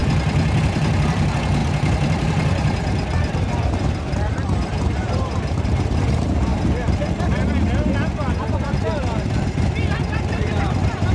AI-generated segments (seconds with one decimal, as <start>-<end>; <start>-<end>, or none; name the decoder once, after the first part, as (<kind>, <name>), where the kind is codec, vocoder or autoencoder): 0.6-6.5 (vocoder, BigVGAN v2); 8.4-11.1